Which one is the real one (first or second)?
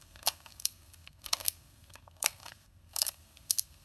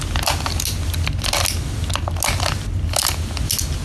second